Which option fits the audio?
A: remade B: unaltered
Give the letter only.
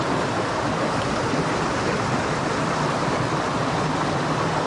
B